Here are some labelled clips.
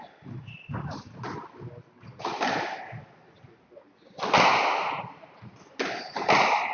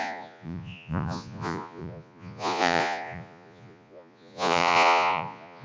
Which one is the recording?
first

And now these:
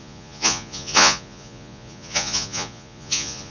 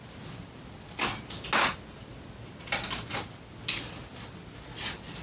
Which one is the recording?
second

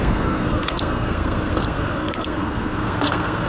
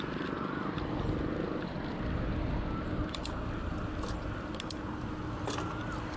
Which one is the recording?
second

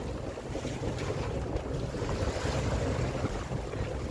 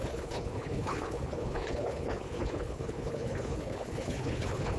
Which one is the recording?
first